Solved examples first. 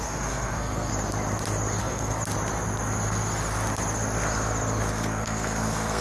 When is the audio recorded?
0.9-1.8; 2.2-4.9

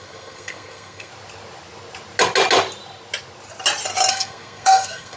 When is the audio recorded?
1.1-4.1

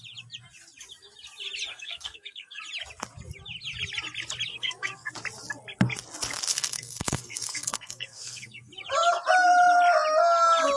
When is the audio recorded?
0.0-1.7; 2.6-4.5; 5.1-6.5; 8.7-10.8

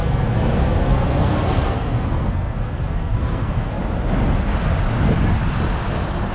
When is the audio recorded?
3.8-6.3

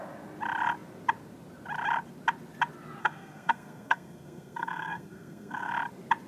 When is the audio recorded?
0.0-3.0; 5.7-6.3

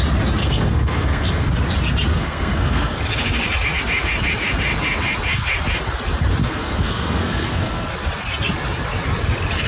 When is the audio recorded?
0.0-0.4; 1.5-2.1; 3.0-6.4; 7.9-9.7